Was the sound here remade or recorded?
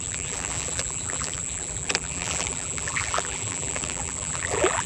remade